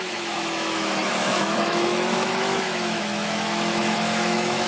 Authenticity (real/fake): fake